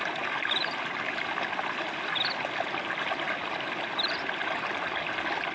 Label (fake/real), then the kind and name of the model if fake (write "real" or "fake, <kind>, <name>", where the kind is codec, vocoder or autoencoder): real